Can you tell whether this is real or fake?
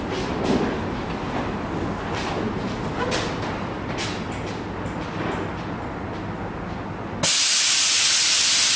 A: real